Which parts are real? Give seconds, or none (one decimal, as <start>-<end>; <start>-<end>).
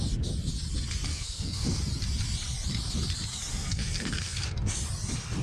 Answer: 0.0-1.1; 1.8-3.5; 4.4-5.4